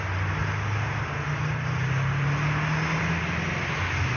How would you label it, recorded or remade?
recorded